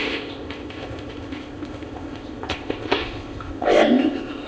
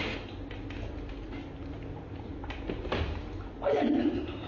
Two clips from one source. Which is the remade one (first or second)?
first